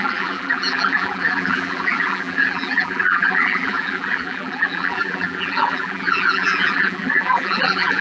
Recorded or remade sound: remade